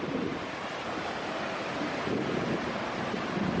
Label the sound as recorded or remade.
remade